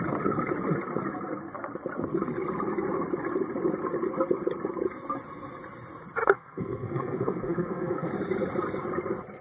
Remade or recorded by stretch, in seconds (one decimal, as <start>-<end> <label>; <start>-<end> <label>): 0.0-6.2 recorded; 6.2-8.1 remade; 8.1-9.4 recorded